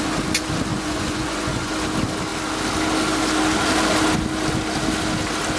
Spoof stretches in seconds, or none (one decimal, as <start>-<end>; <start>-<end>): 0.7-1.7